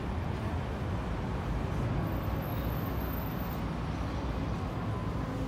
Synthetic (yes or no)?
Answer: no